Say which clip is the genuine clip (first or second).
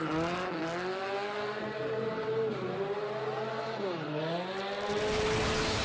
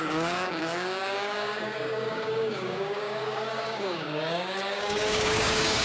first